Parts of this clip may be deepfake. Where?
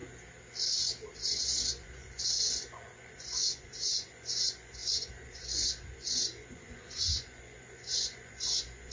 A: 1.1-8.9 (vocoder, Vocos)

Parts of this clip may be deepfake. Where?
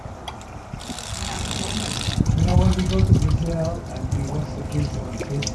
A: none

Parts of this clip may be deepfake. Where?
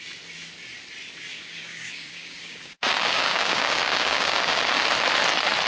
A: 1.3-4.7 (codec, DAC)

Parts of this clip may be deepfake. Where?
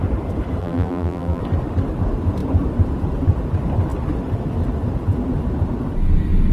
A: 0.6-1.4 (vocoder, BigVGAN v2)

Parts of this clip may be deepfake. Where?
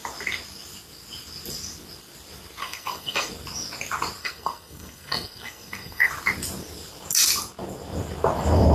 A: 2.6-3.3 (codec, SNAC); 4.2-6.1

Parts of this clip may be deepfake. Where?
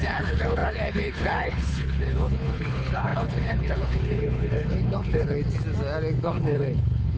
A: 0.0-5.4 (codec, HILCodec); 6.2-7.2